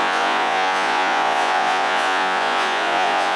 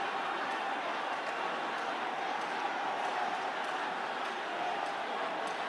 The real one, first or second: second